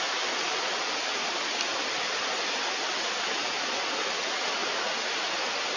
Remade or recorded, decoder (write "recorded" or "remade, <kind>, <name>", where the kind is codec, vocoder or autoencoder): recorded